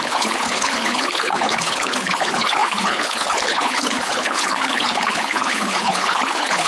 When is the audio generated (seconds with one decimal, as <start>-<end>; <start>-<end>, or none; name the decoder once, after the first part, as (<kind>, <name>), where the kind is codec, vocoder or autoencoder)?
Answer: 0.0-6.7 (codec, HILCodec)